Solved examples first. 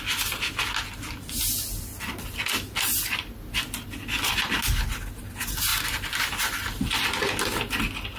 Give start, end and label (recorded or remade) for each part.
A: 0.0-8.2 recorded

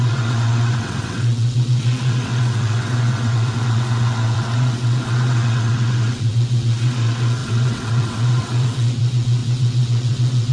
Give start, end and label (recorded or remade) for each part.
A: 0.0-10.5 remade

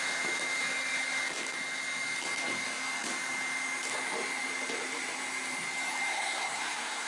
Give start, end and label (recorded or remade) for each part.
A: 0.0-6.1 recorded; 6.1-7.1 remade

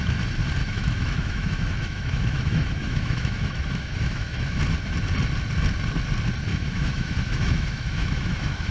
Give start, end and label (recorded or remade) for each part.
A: 0.0-0.6 recorded; 0.6-4.6 remade; 4.6-6.5 recorded; 6.5-8.7 remade

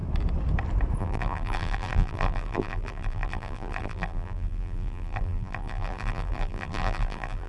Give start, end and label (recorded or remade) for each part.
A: 0.0-1.0 recorded; 1.0-7.5 remade

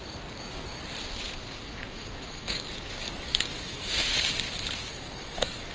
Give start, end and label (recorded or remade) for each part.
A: 0.0-1.4 recorded; 1.4-4.3 remade; 4.3-4.8 recorded; 4.8-5.7 remade